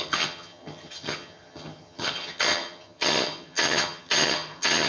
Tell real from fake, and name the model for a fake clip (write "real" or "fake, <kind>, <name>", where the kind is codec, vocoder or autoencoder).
fake, vocoder, HiFi-GAN